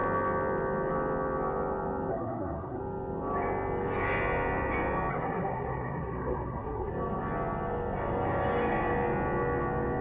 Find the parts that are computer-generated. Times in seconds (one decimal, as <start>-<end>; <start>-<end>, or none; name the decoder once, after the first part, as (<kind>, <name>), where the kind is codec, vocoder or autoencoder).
2.1-2.8 (codec, SNAC); 5.1-6.9